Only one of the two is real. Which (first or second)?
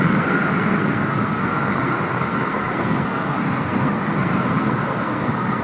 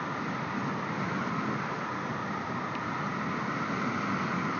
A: second